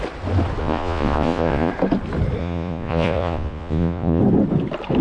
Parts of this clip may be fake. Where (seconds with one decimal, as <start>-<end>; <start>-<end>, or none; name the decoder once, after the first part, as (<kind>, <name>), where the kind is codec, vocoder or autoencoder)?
0.6-1.7 (vocoder, Vocos); 2.4-4.2